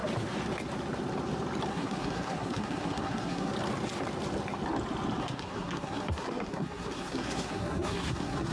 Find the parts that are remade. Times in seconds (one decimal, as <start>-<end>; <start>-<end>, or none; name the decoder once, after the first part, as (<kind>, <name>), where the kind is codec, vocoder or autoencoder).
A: 1.7-3.5 (codec, SNAC); 5.2-8.5